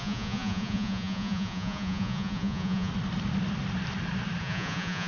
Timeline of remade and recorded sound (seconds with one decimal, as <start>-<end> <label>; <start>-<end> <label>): 0.0-2.9 remade; 2.9-4.4 recorded; 4.4-5.1 remade